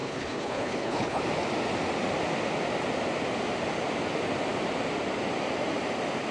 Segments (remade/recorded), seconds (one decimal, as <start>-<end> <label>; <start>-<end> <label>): 0.0-1.2 remade; 1.2-6.3 recorded